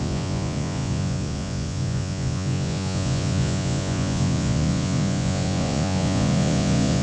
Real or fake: fake